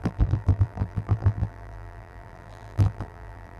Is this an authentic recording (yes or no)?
no